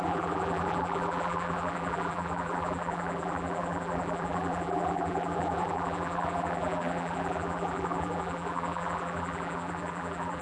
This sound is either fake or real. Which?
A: fake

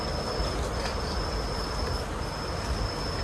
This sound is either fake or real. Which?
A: real